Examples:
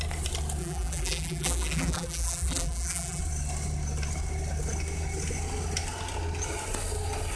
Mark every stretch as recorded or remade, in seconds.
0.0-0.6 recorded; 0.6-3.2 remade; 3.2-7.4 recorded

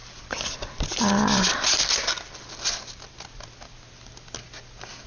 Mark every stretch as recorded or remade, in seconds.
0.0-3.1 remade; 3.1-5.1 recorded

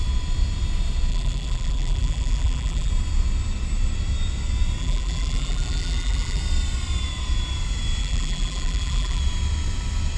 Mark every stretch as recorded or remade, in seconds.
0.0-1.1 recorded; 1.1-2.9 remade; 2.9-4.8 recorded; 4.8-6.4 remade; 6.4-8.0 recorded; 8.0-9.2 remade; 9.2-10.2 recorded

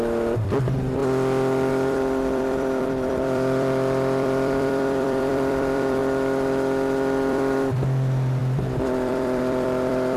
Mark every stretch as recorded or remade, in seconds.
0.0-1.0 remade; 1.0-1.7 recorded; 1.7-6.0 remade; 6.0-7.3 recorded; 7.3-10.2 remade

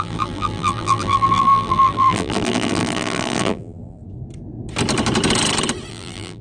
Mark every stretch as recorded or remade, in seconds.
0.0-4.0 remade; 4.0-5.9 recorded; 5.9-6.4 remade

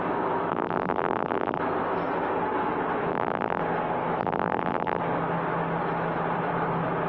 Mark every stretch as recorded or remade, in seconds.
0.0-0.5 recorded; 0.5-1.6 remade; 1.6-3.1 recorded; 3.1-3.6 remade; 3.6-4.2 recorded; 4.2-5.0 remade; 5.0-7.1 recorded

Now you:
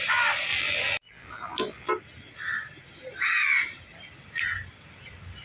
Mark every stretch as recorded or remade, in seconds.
0.0-0.5 recorded; 0.5-1.9 remade; 1.9-5.4 recorded

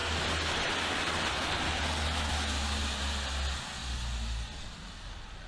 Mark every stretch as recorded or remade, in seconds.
0.0-5.5 recorded